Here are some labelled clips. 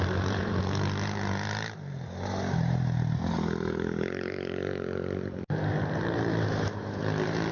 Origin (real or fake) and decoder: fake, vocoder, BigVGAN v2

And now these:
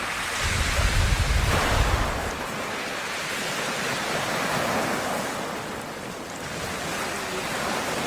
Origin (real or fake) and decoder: real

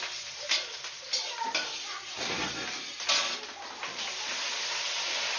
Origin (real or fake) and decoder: real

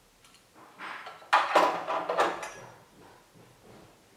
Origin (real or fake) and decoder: real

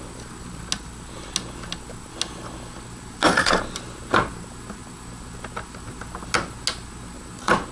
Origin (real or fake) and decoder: real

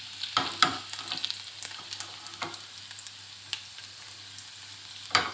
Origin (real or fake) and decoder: real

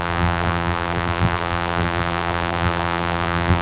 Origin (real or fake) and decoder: fake, vocoder, BigVGAN v2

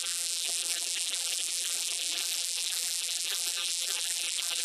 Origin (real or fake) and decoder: fake, vocoder, BigVGAN v2